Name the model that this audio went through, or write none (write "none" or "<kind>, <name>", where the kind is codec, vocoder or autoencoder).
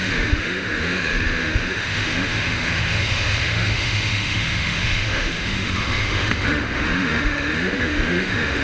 autoencoder, DAC-VAE